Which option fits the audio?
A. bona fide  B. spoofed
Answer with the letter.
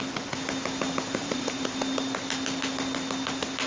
A